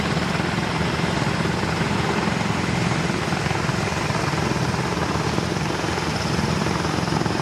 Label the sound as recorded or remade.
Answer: remade